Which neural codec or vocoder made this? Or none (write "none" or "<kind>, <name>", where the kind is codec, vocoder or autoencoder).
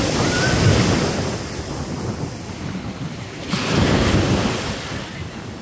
none